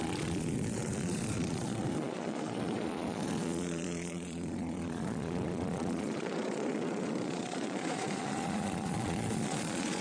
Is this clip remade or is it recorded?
remade